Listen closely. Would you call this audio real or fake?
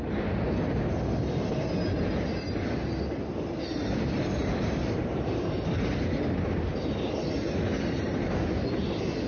real